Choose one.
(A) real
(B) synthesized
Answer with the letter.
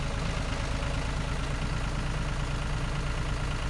A